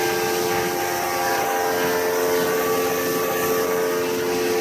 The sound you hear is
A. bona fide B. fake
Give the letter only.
A